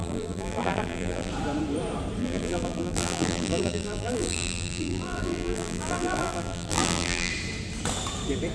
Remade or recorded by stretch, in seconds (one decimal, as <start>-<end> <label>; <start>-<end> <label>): 0.0-1.3 remade; 1.3-2.2 recorded; 2.2-7.3 remade; 7.3-8.5 recorded